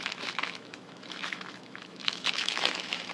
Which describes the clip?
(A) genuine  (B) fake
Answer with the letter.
B